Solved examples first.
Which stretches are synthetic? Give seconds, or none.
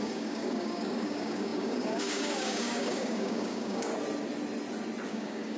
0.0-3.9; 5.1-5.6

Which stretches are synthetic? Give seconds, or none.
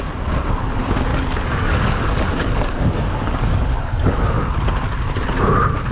1.1-4.6